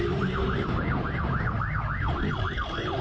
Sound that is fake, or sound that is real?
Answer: fake